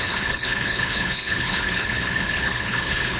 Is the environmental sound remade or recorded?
remade